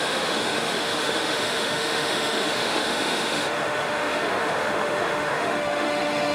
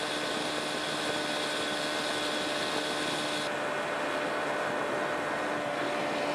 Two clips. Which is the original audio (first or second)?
second